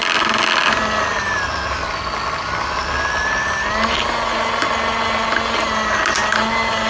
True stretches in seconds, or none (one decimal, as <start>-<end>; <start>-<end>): 0.0-6.9